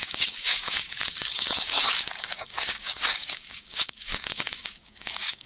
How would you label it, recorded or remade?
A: remade